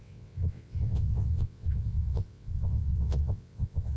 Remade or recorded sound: remade